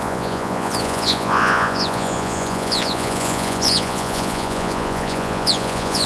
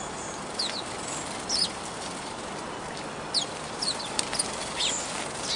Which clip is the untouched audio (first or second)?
second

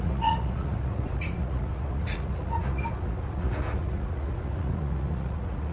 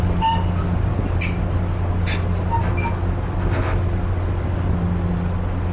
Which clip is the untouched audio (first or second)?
second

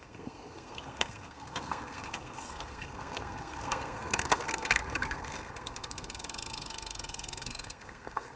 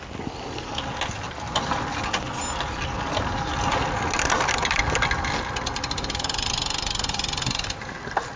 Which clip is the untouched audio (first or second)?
second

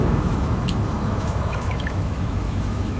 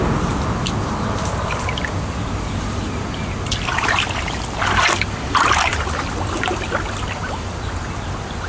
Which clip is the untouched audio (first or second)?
second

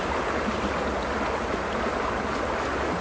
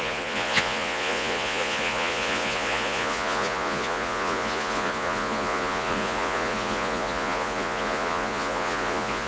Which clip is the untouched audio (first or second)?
first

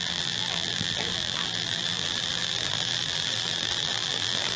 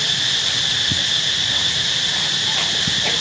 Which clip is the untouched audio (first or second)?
second